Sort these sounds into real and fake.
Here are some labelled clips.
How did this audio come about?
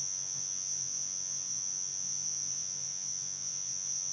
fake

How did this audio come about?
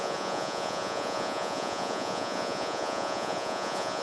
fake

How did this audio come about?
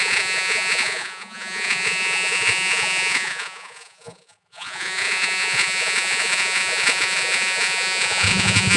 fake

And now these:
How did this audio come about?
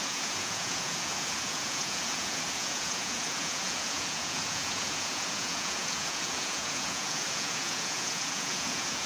fake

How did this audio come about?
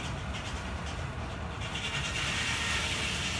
real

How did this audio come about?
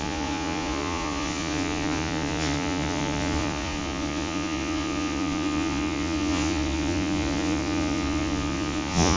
fake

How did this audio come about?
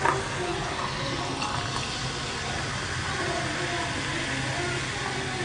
real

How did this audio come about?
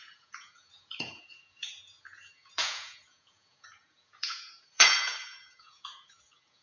fake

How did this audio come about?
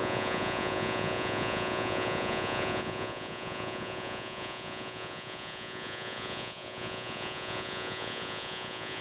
fake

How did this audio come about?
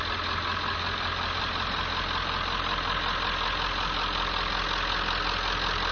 real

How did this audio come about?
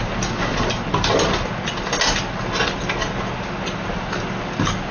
real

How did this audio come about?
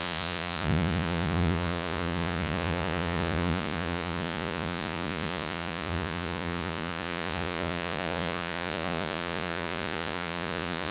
fake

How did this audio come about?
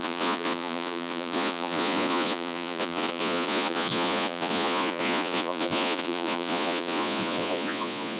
fake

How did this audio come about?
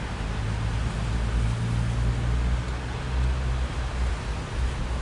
real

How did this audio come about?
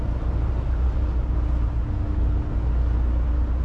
real